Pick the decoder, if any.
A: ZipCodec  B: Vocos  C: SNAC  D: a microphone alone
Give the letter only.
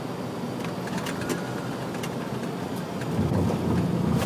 D